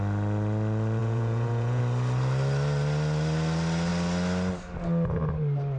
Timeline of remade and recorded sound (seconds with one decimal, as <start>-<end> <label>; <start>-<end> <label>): 0.0-1.0 recorded; 1.0-1.8 remade; 1.8-5.8 recorded